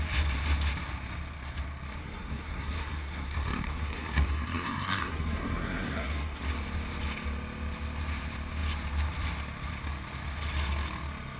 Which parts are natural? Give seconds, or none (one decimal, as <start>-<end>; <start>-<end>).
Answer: 0.0-2.0; 6.4-11.4